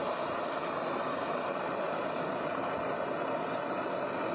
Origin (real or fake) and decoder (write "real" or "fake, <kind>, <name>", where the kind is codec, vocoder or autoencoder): real